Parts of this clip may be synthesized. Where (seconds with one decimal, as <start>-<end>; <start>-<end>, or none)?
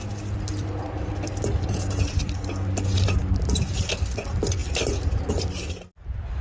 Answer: none